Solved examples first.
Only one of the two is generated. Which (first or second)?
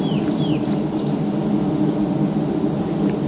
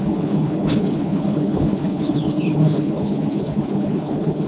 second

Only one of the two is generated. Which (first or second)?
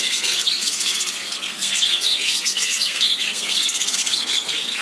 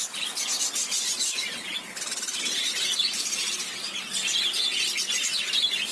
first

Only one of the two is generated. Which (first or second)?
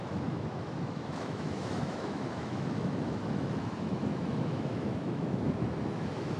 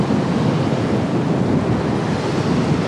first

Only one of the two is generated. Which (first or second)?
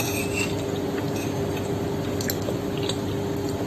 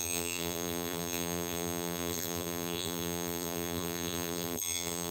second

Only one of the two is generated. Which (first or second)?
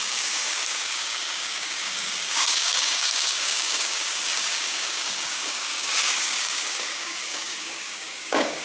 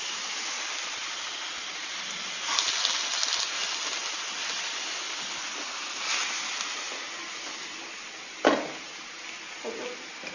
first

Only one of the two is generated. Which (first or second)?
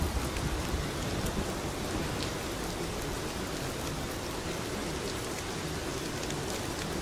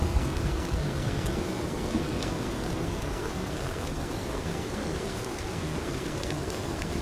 second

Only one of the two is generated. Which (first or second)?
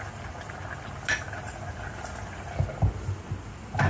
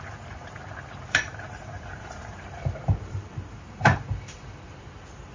second